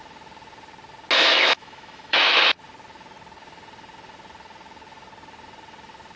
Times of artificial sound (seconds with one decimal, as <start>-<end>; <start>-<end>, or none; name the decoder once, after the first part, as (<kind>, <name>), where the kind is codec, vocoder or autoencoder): 1.3-2.4 (autoencoder, DAC-VAE)